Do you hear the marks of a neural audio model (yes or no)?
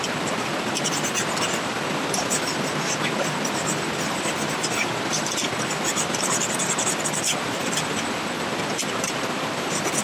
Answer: no